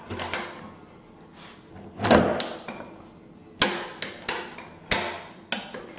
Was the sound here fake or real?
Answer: real